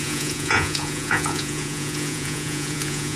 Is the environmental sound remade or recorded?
remade